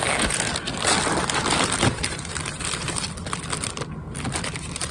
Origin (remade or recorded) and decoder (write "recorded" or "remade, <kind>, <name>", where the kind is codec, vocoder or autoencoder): recorded